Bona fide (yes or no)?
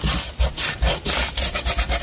yes